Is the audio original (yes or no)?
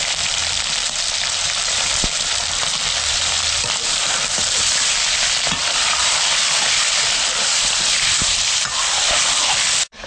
no